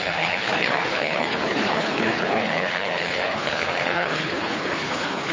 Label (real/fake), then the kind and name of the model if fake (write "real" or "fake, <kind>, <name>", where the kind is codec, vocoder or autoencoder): fake, codec, HILCodec